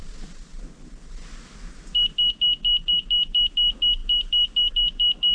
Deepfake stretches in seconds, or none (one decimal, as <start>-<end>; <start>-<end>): none